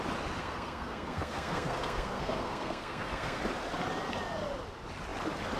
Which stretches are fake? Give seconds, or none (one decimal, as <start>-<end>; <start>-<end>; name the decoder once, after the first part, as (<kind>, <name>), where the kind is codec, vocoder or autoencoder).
0.4-3.4 (codec, SNAC)